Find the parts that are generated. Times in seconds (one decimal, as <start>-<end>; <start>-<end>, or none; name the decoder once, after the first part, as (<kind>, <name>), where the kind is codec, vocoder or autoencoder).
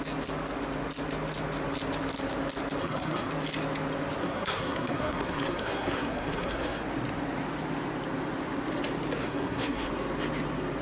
2.8-3.3 (codec, SNAC); 4.2-6.8; 9.2-9.9